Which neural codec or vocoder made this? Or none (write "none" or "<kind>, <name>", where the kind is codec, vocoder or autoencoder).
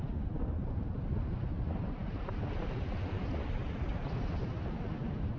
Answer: none